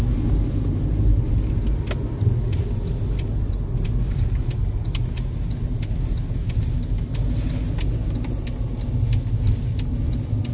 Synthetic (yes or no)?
no